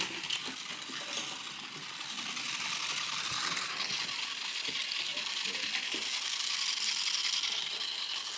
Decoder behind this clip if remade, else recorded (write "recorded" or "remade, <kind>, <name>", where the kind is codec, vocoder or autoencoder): recorded